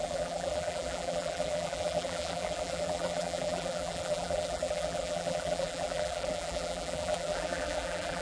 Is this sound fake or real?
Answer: fake